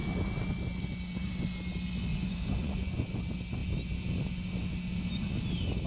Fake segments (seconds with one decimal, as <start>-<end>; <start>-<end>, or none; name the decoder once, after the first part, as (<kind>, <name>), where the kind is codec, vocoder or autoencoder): 2.1-3.2 (vocoder, Vocos)